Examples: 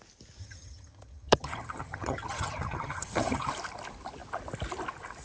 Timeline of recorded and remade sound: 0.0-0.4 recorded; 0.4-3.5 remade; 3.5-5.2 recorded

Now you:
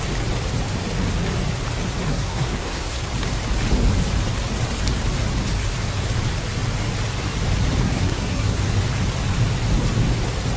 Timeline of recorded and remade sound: 0.0-2.1 recorded; 2.1-3.0 remade; 3.0-7.8 recorded; 7.8-8.6 remade; 8.6-10.6 recorded